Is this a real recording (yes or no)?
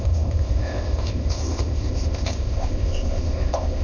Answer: no